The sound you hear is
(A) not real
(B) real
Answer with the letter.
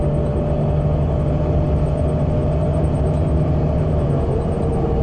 B